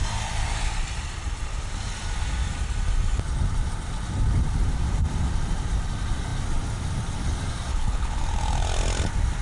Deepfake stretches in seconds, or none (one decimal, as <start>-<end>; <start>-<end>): 7.7-8.2